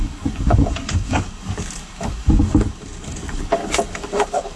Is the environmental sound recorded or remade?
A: remade